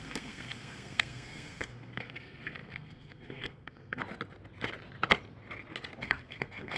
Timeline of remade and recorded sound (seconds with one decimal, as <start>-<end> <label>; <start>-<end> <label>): 0.0-4.0 remade; 4.0-6.0 recorded; 6.0-6.8 remade